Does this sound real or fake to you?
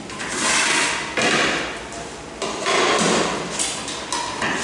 real